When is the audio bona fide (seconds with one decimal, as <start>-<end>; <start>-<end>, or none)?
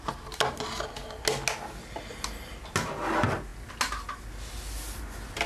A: 0.0-5.5